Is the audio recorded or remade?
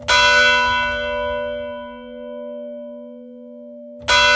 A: recorded